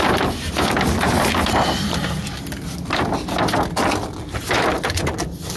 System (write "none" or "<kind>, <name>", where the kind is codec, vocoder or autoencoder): none